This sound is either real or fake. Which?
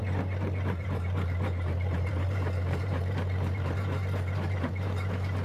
fake